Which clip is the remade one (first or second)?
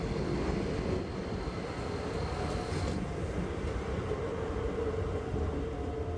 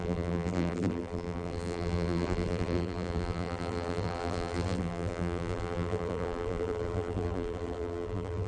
second